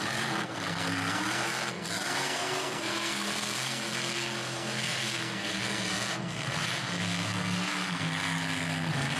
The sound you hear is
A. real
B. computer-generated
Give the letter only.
B